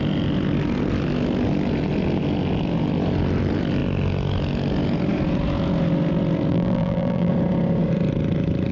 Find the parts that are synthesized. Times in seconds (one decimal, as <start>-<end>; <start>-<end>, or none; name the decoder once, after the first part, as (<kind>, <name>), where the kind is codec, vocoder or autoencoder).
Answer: 6.5-7.3 (vocoder, BigVGAN v2)